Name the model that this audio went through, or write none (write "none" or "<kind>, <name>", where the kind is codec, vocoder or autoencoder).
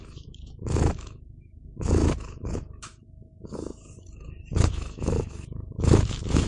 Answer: autoencoder, DAC-VAE